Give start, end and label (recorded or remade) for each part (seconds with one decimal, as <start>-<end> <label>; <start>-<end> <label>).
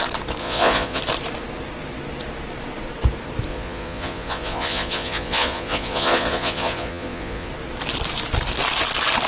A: 0.0-0.4 recorded; 0.4-1.0 remade; 1.0-3.5 recorded; 3.5-7.5 remade; 7.5-9.3 recorded